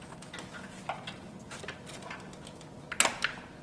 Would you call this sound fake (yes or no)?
no